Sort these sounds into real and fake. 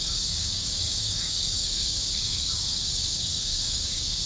fake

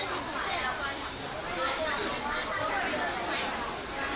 real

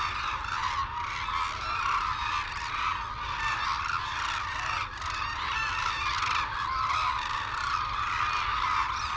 real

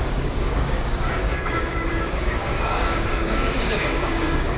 fake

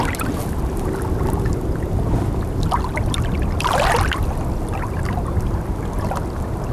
real